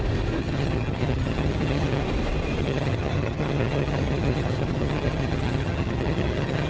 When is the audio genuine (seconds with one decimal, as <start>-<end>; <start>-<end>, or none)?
0.0-0.4; 2.0-2.6